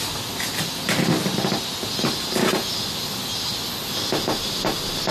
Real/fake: real